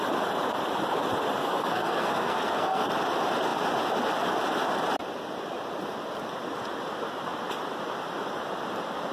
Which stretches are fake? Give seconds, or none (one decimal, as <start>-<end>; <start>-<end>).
1.4-2.9